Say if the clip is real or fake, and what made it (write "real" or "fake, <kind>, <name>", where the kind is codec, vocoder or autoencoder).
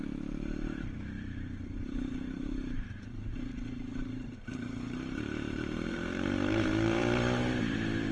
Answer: fake, vocoder, BigVGAN v2